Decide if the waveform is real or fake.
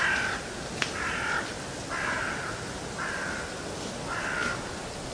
real